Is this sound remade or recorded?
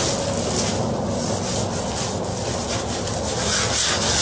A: recorded